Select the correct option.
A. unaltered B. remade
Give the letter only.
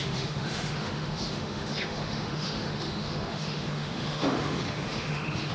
B